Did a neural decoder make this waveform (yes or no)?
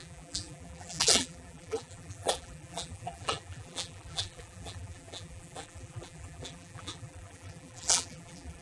yes